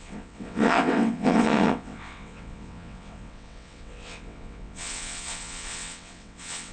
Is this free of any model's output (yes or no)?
no